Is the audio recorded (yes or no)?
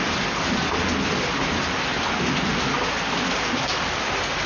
yes